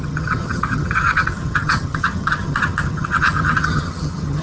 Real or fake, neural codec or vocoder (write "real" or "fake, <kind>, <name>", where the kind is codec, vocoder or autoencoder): fake, vocoder, HiFi-GAN